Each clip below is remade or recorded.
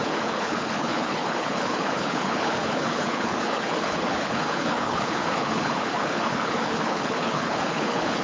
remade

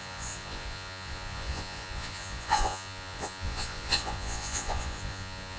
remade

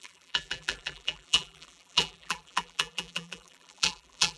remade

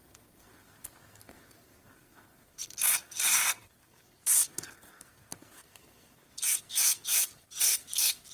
remade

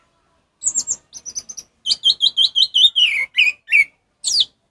recorded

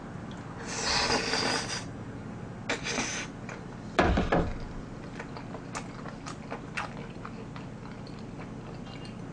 recorded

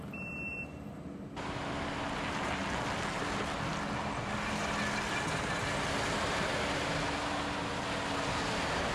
recorded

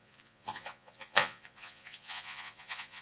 remade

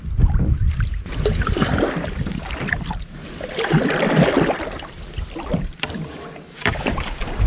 remade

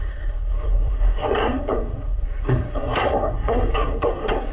remade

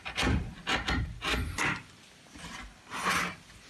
recorded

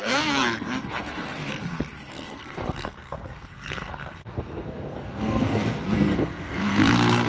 remade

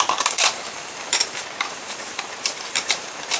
remade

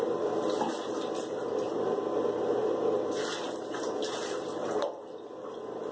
recorded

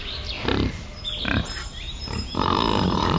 remade